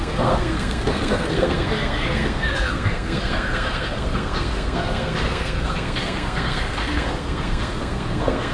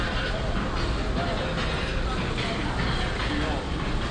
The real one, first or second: second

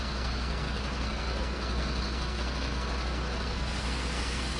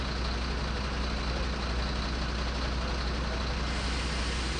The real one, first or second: second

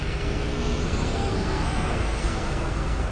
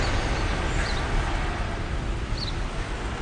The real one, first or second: second